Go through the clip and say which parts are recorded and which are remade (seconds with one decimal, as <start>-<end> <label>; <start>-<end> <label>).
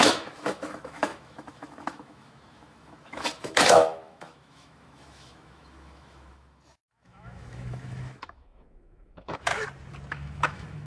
0.0-9.5 remade; 9.5-10.1 recorded; 10.1-10.9 remade